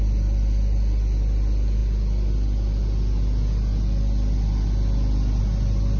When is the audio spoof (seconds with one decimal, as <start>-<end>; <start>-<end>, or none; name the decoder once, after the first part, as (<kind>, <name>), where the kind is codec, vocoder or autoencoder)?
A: none